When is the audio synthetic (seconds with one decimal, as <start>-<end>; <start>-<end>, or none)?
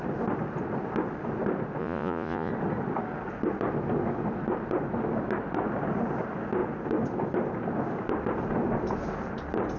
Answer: 1.8-2.5